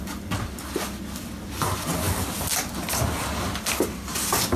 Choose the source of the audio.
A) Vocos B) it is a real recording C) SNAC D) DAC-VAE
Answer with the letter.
B